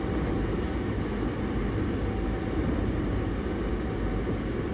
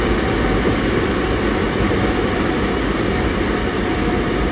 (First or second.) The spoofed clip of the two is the second